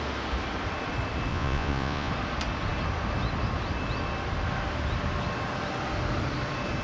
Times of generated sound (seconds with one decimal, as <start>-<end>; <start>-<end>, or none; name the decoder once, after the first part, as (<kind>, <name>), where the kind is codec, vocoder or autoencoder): 1.3-2.1 (vocoder, Vocos)